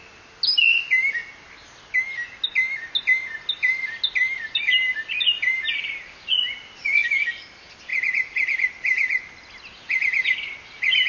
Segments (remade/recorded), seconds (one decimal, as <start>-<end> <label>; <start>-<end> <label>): 0.0-11.1 recorded